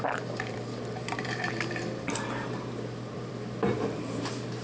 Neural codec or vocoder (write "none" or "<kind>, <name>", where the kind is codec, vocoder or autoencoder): vocoder, BigVGAN v2